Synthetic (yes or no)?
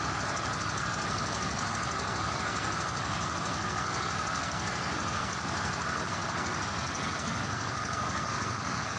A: yes